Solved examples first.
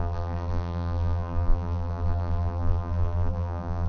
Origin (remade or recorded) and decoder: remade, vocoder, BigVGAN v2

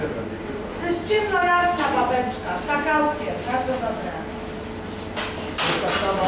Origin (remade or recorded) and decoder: recorded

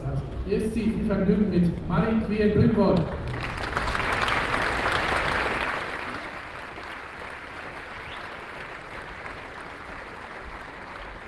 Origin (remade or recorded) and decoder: recorded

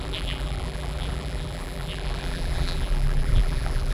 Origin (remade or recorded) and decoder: remade, vocoder, BigVGAN v2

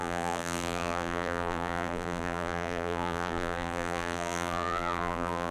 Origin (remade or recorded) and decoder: remade, vocoder, BigVGAN v2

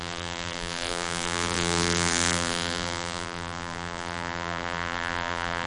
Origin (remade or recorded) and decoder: remade, vocoder, BigVGAN v2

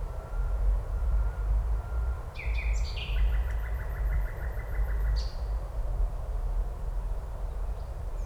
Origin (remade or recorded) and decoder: remade, vocoder, BigVGAN v2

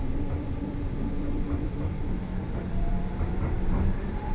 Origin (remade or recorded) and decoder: remade, vocoder, BigVGAN v2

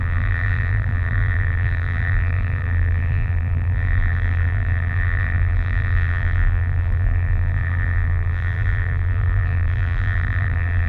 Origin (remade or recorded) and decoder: remade, vocoder, BigVGAN v2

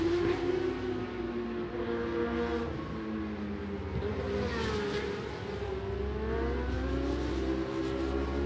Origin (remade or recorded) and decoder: recorded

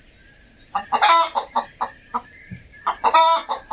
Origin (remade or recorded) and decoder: remade, vocoder, BigVGAN v2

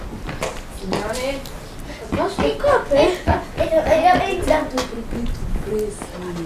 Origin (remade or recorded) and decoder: recorded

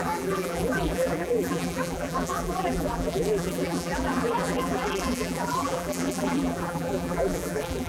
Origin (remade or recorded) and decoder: remade, vocoder, BigVGAN v2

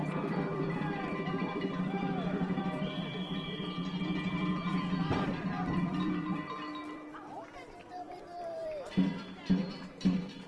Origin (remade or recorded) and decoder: remade, vocoder, BigVGAN v2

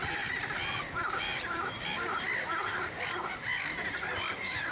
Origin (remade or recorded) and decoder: remade, vocoder, BigVGAN v2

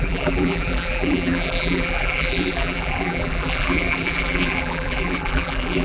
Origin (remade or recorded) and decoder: remade, vocoder, BigVGAN v2